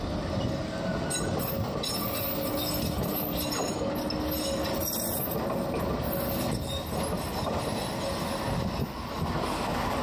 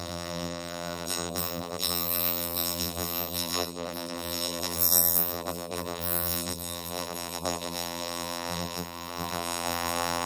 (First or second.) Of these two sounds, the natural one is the first